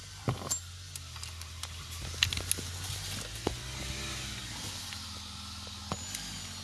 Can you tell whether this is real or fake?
real